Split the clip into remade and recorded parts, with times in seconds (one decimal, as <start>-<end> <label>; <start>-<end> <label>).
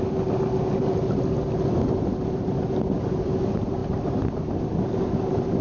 0.0-5.6 recorded